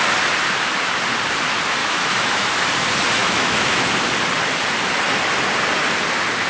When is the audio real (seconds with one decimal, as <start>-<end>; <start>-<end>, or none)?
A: 0.0-1.8; 2.5-3.2; 3.9-6.5